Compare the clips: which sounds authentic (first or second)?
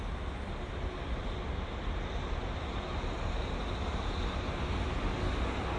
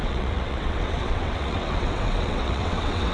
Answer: first